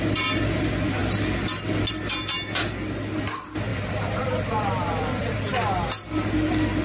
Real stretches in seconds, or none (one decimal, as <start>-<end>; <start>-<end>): 0.0-3.7; 5.3-6.8